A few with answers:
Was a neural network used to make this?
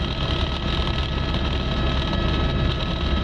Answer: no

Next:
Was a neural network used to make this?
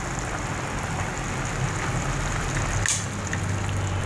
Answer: no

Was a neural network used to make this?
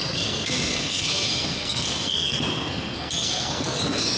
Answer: yes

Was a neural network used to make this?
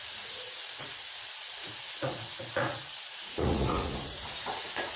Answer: yes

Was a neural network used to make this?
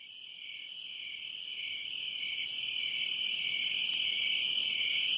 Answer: no